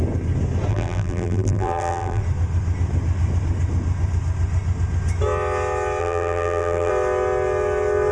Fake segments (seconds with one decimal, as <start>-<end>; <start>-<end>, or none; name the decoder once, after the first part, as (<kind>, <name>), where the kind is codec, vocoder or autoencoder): 0.7-2.2 (vocoder, BigVGAN v2); 6.0-6.9